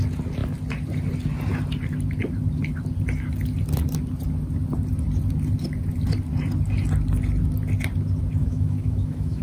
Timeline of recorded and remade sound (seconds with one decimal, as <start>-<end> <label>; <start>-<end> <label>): 0.0-8.4 recorded; 8.4-9.4 remade